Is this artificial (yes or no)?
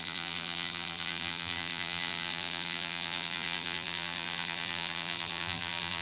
yes